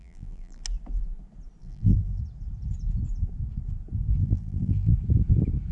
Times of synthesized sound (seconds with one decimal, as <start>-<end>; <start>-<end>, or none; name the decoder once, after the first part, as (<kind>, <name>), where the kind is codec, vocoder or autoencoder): 0.0-0.6 (vocoder, BigVGAN v2); 1.6-2.2; 4.2-4.9